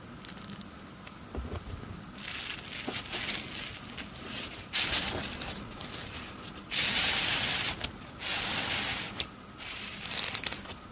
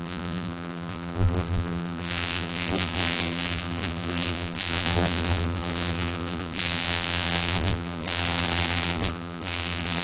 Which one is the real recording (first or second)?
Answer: first